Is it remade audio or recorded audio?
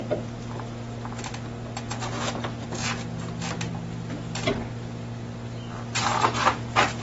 recorded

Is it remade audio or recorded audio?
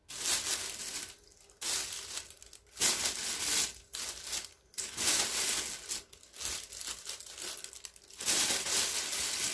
recorded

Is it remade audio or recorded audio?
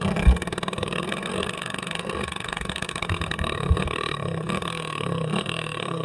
remade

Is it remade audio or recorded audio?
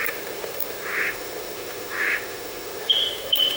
remade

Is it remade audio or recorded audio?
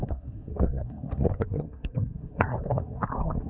remade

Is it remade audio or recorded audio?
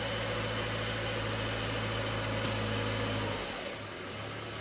recorded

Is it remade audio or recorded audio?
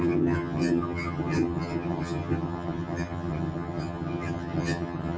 remade